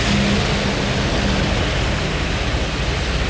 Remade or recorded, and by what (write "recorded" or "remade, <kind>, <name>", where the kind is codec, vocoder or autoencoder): recorded